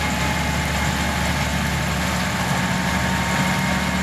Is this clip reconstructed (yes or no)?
no